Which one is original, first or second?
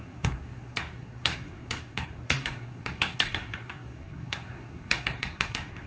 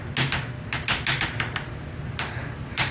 second